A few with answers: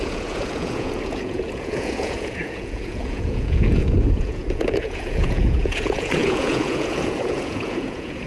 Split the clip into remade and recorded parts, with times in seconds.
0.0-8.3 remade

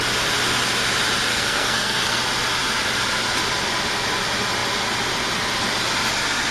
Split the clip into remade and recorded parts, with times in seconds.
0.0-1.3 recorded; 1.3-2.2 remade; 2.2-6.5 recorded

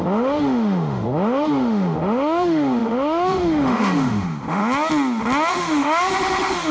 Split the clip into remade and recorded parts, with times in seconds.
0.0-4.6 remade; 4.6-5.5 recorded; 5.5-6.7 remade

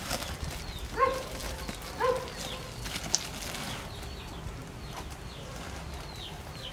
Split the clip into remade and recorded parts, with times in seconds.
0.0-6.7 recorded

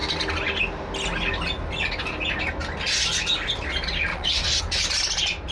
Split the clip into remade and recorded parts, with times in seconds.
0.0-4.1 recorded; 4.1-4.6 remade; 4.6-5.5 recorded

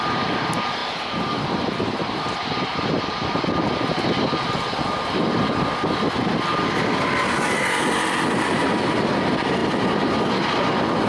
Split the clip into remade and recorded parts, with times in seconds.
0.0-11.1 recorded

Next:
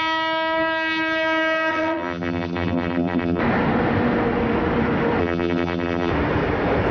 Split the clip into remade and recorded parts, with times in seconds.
0.0-1.7 recorded; 1.7-3.4 remade; 3.4-5.2 recorded; 5.2-6.1 remade; 6.1-6.9 recorded

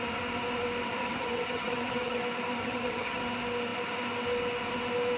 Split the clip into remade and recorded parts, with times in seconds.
0.0-1.0 recorded; 1.0-2.2 remade; 2.2-2.6 recorded; 2.6-3.2 remade; 3.2-5.2 recorded